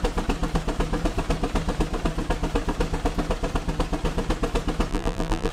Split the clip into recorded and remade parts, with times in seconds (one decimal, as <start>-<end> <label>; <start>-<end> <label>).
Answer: 0.0-4.9 recorded; 4.9-5.5 remade